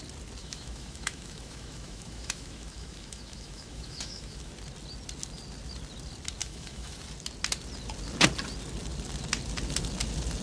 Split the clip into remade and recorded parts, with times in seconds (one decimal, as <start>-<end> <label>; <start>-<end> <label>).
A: 0.0-0.4 recorded; 0.4-4.5 remade; 4.5-6.4 recorded; 6.4-7.0 remade; 7.0-10.4 recorded